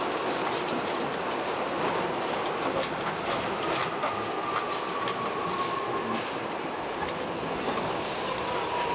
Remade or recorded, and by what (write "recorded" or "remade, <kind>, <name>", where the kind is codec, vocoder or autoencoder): recorded